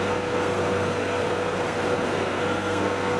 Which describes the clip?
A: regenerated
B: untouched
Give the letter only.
A